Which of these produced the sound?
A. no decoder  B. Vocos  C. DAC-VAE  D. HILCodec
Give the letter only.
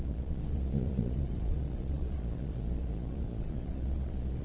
B